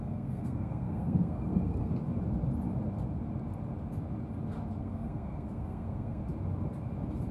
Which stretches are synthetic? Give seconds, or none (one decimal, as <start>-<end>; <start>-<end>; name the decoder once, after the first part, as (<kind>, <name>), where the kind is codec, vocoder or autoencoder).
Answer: 0.0-1.9 (codec, SNAC); 4.8-6.2